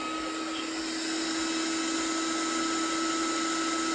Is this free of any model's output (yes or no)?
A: yes